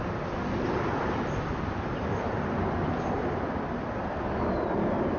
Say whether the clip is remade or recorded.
remade